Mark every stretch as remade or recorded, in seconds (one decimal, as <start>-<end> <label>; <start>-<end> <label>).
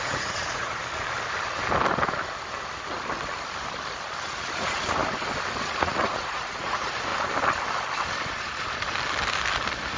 0.0-0.8 remade; 0.8-4.6 recorded; 4.6-5.0 remade; 5.0-5.6 recorded; 5.6-7.1 remade; 7.1-10.0 recorded